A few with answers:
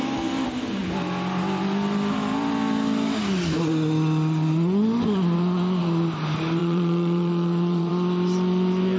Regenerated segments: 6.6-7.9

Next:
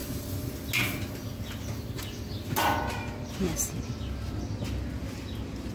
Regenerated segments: none

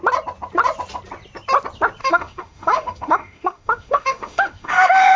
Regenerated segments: 2.0-5.2

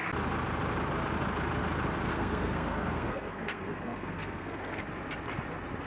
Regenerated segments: 2.1-4.8

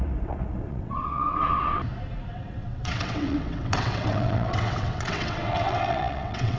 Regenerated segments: 0.0-1.8; 2.3-6.6